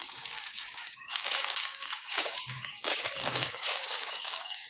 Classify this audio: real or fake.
fake